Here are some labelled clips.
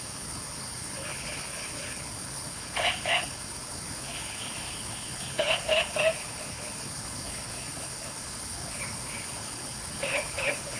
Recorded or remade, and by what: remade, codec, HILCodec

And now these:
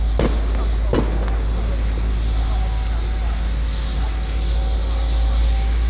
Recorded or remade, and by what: recorded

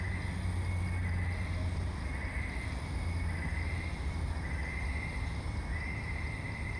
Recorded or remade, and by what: recorded